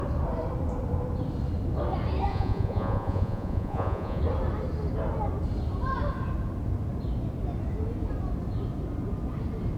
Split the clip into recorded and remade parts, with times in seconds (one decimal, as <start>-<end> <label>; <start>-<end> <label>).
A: 0.0-2.3 recorded; 2.3-4.2 remade; 4.2-9.8 recorded